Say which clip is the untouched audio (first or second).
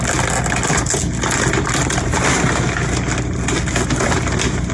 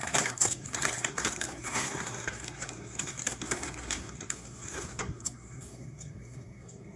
first